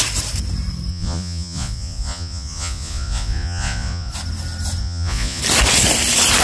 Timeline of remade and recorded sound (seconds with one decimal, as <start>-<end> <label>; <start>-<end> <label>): 0.0-0.9 recorded; 0.9-4.1 remade; 4.1-4.8 recorded; 4.8-5.4 remade; 5.4-6.4 recorded